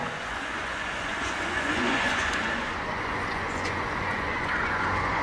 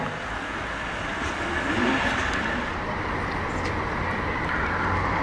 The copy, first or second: first